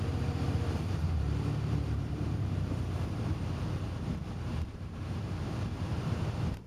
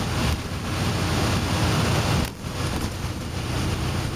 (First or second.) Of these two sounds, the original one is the second